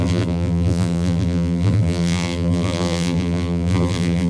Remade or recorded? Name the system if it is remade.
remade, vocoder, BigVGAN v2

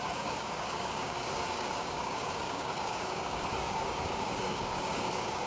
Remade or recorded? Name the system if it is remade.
remade, codec, DAC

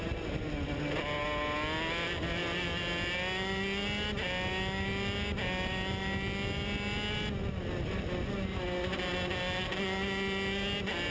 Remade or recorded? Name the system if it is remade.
recorded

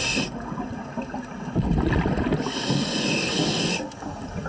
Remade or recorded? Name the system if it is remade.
recorded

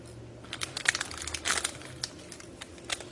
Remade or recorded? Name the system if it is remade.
recorded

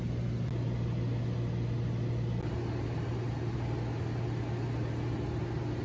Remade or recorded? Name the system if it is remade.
recorded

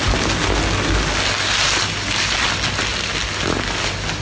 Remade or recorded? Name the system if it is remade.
recorded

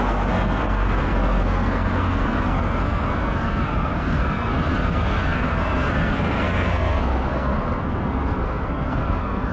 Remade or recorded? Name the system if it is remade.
remade, codec, SNAC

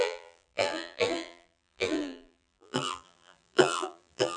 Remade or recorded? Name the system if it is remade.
remade, vocoder, BigVGAN v2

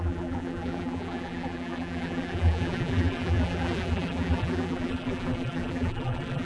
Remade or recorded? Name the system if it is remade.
remade, vocoder, BigVGAN v2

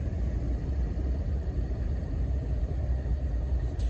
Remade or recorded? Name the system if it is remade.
remade, vocoder, BigVGAN v2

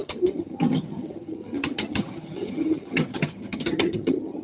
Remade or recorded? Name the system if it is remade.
remade, vocoder, HiFi-GAN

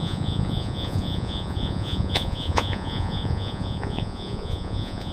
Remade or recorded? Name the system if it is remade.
remade, vocoder, Vocos